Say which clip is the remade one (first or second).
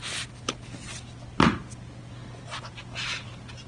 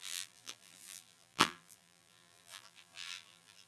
second